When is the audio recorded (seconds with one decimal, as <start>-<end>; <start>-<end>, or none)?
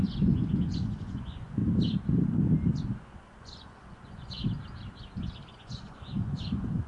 1.6-2.8; 4.4-5.5